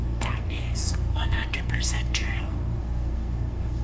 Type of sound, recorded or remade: remade